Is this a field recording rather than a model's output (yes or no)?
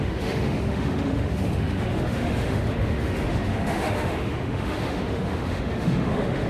no